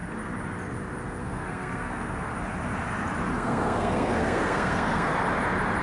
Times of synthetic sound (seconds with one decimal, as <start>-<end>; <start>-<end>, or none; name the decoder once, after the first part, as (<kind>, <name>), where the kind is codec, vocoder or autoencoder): 1.2-2.3 (codec, SNAC); 3.3-5.1